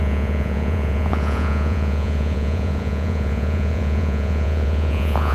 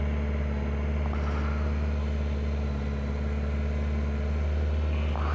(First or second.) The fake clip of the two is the first